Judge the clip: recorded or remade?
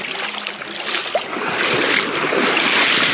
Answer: recorded